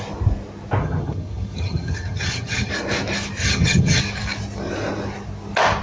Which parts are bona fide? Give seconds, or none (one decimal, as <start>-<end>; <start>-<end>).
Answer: 0.0-0.8; 2.7-3.4; 4.0-5.8